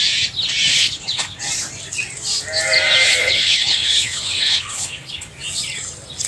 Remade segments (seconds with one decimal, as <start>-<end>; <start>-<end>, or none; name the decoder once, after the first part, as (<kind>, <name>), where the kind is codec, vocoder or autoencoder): 0.7-1.4 (codec, HILCodec); 3.2-5.3